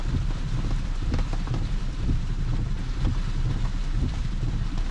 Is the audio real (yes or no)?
no